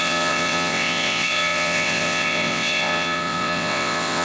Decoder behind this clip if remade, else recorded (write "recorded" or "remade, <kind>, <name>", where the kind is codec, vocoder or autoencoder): remade, vocoder, WaveNeXt